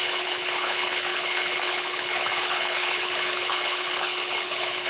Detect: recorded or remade remade